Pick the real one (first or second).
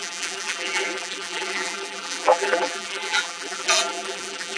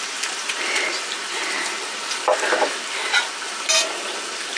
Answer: second